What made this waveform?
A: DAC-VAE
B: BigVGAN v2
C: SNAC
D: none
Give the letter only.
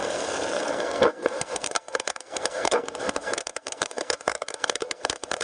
C